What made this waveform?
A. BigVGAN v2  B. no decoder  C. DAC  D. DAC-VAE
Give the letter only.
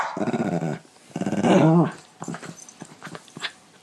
B